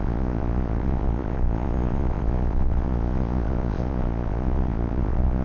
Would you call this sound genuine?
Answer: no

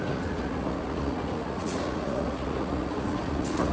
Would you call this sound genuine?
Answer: no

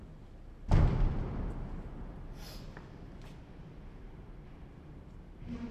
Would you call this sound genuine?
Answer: yes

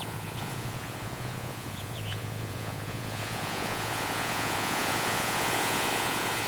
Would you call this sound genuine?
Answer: no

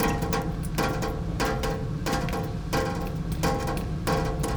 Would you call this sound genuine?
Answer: yes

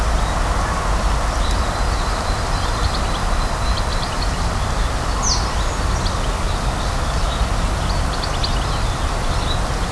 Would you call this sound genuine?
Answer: yes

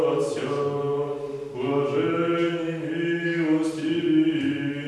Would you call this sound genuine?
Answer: yes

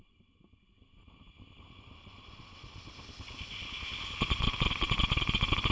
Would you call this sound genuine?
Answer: yes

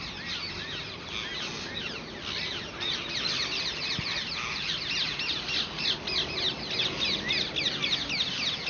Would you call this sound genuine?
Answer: yes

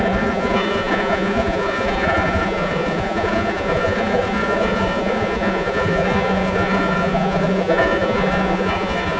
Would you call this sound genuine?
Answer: no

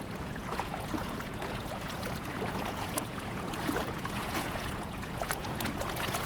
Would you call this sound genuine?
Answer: no